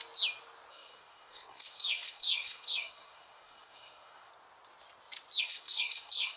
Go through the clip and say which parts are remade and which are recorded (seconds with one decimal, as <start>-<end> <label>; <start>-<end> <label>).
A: 0.0-0.7 recorded; 0.7-4.3 remade; 4.3-5.4 recorded; 5.4-6.4 remade